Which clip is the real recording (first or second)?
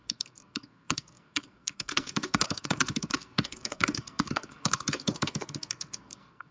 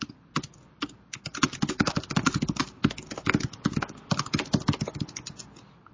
second